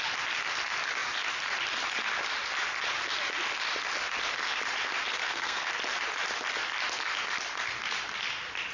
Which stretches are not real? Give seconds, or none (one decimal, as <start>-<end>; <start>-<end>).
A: 5.2-5.7